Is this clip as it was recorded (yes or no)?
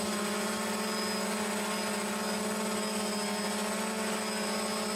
yes